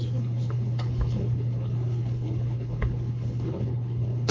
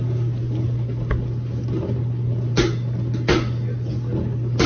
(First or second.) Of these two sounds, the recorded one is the second